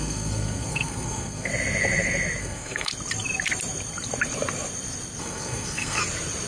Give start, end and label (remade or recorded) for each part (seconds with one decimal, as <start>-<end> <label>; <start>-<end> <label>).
0.0-1.5 remade; 1.5-2.4 recorded; 2.4-2.9 remade; 2.9-5.2 recorded; 5.2-6.0 remade; 6.0-6.5 recorded